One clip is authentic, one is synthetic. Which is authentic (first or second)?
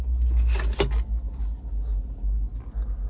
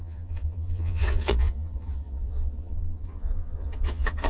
first